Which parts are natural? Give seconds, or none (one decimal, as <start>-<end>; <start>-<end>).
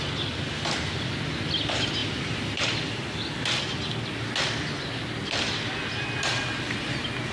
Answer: 0.0-7.3